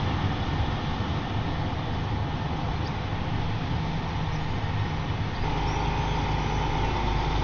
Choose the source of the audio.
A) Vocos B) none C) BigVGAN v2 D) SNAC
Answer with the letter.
B